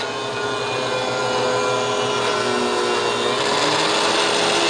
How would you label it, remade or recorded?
recorded